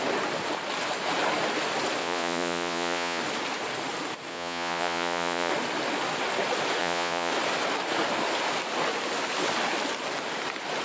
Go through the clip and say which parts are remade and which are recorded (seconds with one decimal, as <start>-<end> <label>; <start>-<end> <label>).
0.0-2.0 recorded; 2.0-3.2 remade; 3.2-4.3 recorded; 4.3-5.5 remade; 5.5-6.8 recorded; 6.8-7.3 remade; 7.3-10.8 recorded